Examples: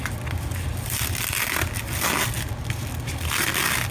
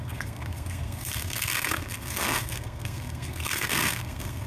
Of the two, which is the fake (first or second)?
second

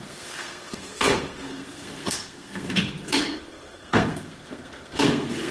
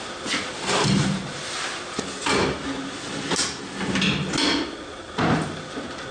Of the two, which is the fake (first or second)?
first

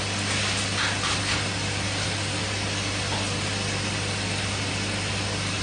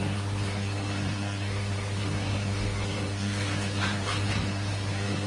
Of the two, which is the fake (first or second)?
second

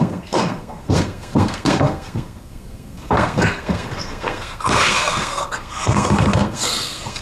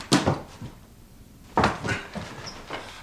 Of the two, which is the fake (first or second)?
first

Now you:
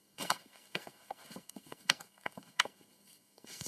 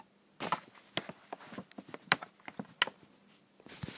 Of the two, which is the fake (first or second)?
first